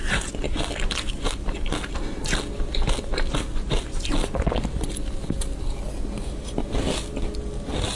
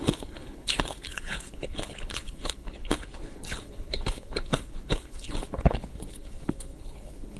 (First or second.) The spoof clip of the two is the second